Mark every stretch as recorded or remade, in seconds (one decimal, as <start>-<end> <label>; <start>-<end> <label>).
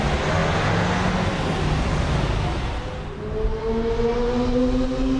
0.0-5.2 recorded